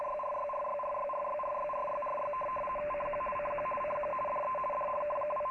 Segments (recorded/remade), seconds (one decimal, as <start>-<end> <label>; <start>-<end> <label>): 0.0-1.8 remade; 1.8-2.8 recorded; 2.8-5.5 remade

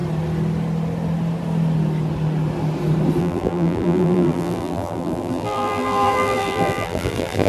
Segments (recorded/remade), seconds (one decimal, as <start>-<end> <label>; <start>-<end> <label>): 0.0-3.2 recorded; 3.2-7.5 remade

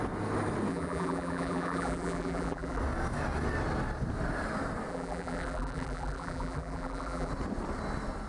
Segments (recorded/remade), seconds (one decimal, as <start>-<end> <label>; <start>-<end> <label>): 0.0-0.7 recorded; 0.7-2.8 remade; 2.8-4.9 recorded; 4.9-7.3 remade; 7.3-8.3 recorded

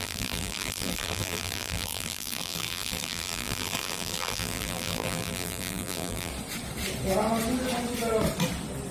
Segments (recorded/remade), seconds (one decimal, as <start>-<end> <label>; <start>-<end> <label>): 0.0-6.3 remade; 6.3-8.9 recorded

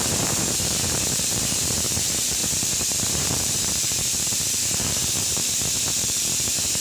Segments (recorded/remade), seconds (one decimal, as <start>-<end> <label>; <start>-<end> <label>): 0.0-6.8 remade

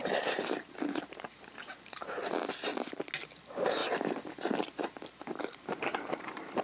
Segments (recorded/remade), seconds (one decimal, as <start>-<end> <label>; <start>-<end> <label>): 0.0-2.7 remade; 2.7-3.4 recorded; 3.4-3.8 remade; 3.8-4.5 recorded; 4.5-6.6 remade

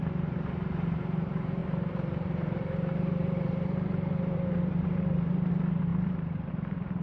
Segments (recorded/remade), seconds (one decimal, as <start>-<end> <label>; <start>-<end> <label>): 0.0-7.0 remade

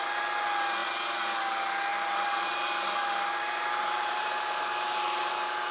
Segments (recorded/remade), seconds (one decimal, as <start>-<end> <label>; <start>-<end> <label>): 0.0-1.9 recorded; 1.9-5.3 remade; 5.3-5.7 recorded